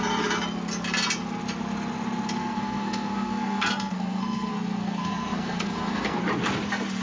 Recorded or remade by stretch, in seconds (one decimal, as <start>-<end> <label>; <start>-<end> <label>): 0.0-2.4 recorded; 2.4-6.2 remade; 6.2-7.0 recorded